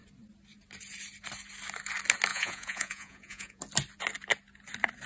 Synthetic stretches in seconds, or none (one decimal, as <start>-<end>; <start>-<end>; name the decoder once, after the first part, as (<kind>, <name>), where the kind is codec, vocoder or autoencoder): 2.3-3.6 (vocoder, Vocos)